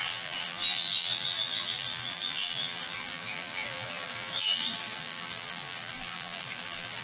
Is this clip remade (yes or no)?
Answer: yes